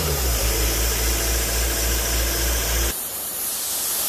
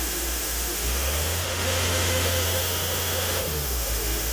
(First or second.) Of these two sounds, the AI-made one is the second